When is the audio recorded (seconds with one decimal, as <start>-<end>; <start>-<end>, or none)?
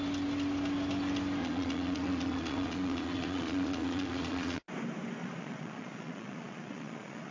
0.0-1.4; 4.6-5.2